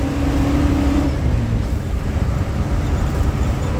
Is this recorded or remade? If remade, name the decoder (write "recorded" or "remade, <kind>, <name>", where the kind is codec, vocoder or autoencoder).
remade, vocoder, BigVGAN v2